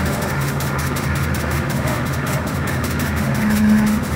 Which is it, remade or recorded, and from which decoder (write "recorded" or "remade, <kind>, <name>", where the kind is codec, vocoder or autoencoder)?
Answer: remade, autoencoder, DAC-VAE